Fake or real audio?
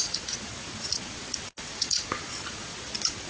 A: fake